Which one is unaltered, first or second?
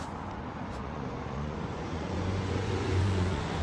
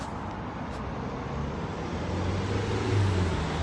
second